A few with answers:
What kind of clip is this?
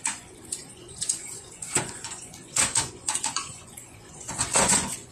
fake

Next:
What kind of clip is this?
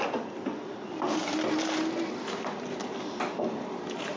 real